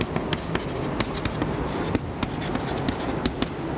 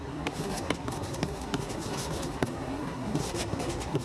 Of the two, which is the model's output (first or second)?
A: second